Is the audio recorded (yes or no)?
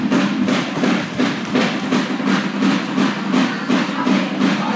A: yes